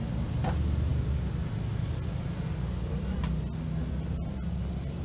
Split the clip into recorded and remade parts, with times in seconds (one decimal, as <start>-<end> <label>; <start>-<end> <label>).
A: 0.0-5.0 recorded